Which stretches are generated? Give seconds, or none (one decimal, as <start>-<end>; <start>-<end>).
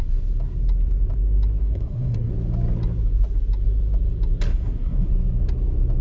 1.6-2.3; 4.5-5.1